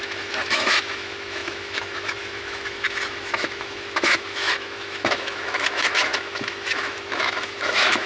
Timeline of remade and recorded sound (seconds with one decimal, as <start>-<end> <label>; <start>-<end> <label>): 0.0-8.1 remade